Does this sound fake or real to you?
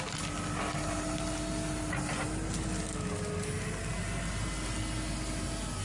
real